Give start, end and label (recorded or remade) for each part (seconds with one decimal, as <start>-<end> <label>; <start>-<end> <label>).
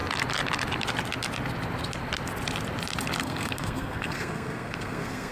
0.0-3.2 recorded; 3.2-5.3 remade